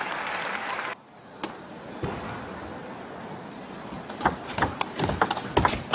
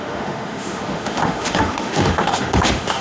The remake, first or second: second